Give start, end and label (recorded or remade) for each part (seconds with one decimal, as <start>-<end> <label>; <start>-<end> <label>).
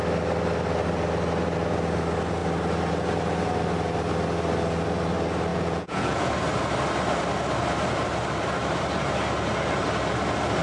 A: 0.0-5.5 recorded; 5.5-6.3 remade; 6.3-10.6 recorded